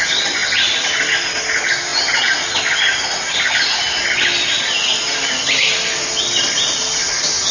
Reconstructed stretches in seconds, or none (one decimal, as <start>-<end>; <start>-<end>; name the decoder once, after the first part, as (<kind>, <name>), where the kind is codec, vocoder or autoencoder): none